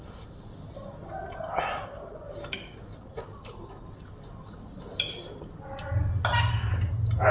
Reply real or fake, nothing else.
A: real